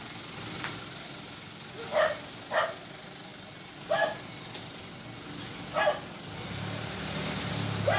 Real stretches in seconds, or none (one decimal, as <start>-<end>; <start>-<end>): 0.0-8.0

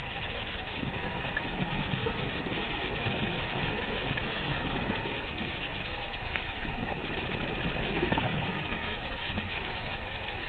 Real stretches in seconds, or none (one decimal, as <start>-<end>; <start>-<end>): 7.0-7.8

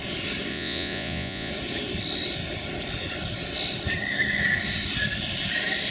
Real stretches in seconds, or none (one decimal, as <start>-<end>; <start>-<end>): 0.0-0.5; 1.5-5.9

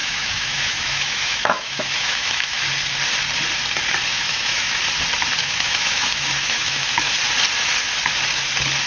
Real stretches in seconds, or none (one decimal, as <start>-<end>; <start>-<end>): 2.6-4.1; 4.8-5.4; 7.1-8.9

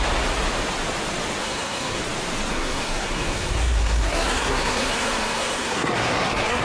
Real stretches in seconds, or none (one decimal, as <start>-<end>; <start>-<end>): 0.0-1.4; 2.0-2.5